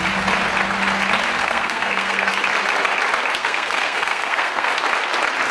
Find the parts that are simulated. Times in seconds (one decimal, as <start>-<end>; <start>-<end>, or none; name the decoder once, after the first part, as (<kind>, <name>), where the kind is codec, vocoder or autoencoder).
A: 1.4-2.3 (codec, SNAC); 3.4-4.7